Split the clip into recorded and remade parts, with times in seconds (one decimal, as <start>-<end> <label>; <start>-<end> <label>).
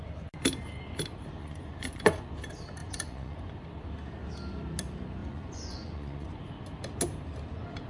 0.0-1.4 recorded; 1.4-2.3 remade; 2.3-2.8 recorded; 2.8-3.5 remade; 3.5-5.2 recorded; 5.2-6.4 remade; 6.4-7.9 recorded